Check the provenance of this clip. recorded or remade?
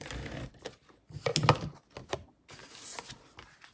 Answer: recorded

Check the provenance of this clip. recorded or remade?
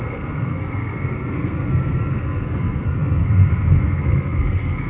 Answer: remade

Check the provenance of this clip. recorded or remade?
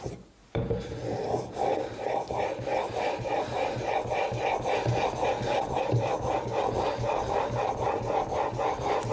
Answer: recorded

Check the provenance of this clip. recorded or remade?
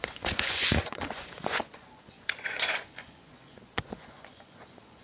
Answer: remade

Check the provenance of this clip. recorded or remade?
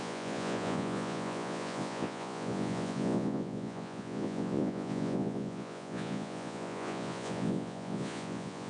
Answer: remade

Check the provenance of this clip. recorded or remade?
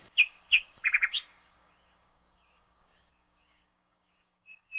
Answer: remade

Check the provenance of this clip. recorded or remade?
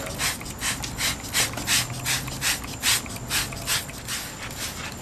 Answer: recorded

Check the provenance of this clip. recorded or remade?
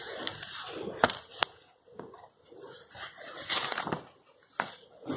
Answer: recorded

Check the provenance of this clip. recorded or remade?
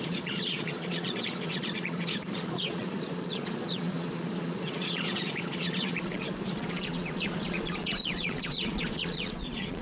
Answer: remade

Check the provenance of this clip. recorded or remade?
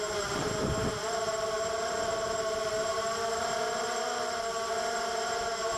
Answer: remade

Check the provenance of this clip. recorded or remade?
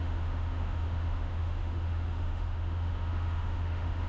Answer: remade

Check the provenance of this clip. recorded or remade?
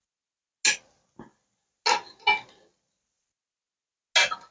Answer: recorded